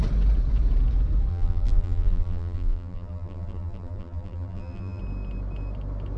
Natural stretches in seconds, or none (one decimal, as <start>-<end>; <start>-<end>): 0.0-1.3; 5.0-6.2